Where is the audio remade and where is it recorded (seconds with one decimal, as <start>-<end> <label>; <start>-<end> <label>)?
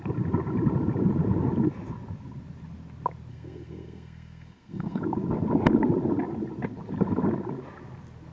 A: 0.0-3.3 recorded; 3.3-5.0 remade; 5.0-8.3 recorded